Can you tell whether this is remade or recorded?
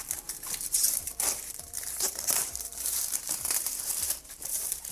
remade